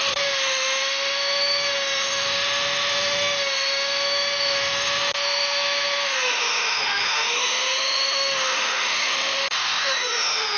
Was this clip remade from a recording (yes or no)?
yes